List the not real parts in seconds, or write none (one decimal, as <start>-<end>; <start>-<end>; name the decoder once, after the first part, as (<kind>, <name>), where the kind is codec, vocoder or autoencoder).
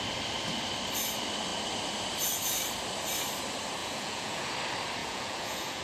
3.8-4.5 (vocoder, Vocos); 5.0-5.8